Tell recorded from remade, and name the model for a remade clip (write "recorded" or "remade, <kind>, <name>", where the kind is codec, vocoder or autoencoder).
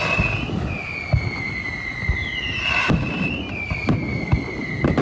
recorded